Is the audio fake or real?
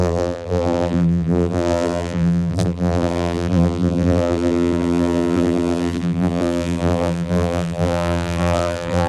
fake